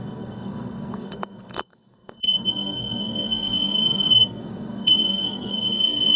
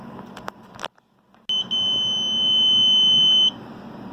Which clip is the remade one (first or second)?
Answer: first